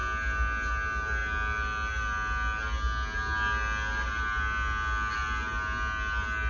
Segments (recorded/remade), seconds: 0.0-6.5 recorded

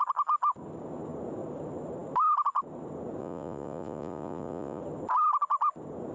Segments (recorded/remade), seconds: 0.0-3.2 recorded; 3.2-4.8 remade; 4.8-6.1 recorded

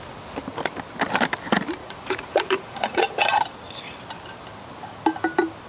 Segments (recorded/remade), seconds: 0.0-1.8 recorded; 1.8-3.1 remade; 3.1-5.7 recorded

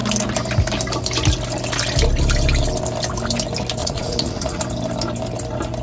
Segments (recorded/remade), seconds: 0.0-3.8 recorded; 3.8-4.6 remade; 4.6-5.8 recorded

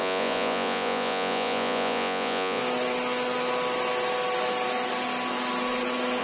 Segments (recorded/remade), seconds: 0.0-2.6 remade; 2.6-6.2 recorded